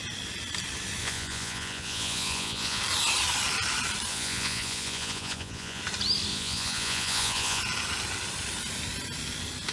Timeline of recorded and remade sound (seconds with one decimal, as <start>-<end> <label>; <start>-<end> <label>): 0.0-1.0 recorded; 1.0-2.8 remade; 2.8-4.1 recorded; 4.1-5.8 remade; 5.8-6.3 recorded; 6.3-7.6 remade; 7.6-9.7 recorded